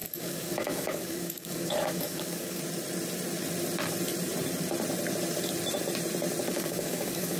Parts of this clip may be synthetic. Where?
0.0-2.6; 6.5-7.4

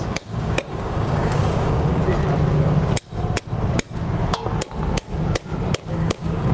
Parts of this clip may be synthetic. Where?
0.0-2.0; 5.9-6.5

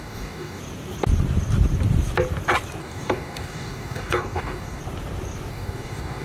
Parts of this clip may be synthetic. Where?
0.0-0.6; 2.8-4.8; 5.5-6.2

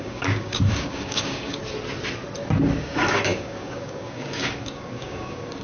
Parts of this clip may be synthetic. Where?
0.0-1.6; 2.8-5.6

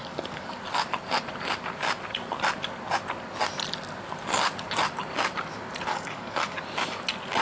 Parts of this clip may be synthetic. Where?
0.0-0.6; 5.9-6.6

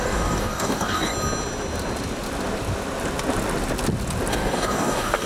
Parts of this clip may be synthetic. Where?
0.0-1.1; 4.3-5.3